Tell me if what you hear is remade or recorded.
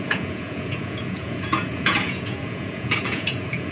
remade